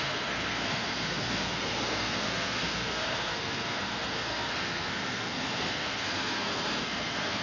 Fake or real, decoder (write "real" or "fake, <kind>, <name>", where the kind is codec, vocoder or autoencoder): fake, codec, SNAC